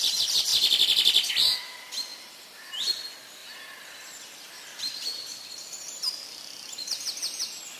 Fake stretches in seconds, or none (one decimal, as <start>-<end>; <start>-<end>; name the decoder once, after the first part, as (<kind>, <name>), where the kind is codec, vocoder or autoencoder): 0.5-1.3 (vocoder, BigVGAN v2); 2.1-3.0; 3.4-6.9